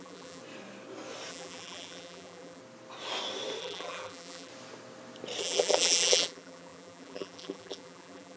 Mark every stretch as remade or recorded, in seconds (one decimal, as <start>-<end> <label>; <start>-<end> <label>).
0.0-0.4 remade; 0.4-1.3 recorded; 1.3-2.6 remade; 2.6-3.6 recorded; 3.6-4.5 remade; 4.5-5.4 recorded; 5.4-8.4 remade